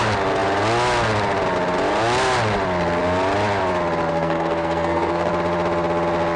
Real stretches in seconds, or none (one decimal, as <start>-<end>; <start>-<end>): 0.0-4.1; 5.3-6.4